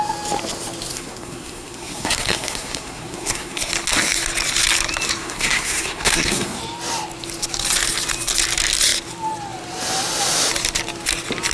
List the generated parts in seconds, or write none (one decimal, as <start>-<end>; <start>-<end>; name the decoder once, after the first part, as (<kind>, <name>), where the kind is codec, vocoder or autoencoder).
0.9-3.7 (codec, SNAC); 5.2-6.6